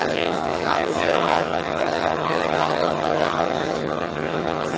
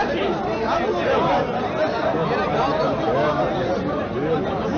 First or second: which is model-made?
first